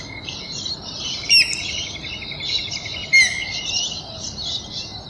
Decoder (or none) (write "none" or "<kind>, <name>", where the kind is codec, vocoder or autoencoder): none